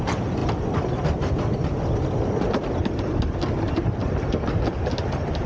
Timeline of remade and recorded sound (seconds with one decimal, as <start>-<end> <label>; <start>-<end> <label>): 0.0-5.5 recorded